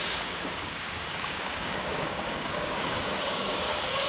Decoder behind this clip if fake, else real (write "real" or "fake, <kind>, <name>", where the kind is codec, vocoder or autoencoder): fake, codec, DAC